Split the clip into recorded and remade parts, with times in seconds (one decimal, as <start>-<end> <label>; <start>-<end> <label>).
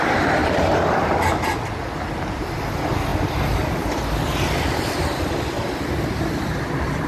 0.0-7.1 recorded